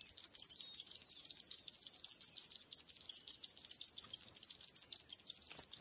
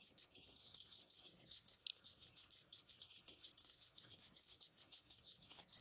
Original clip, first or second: first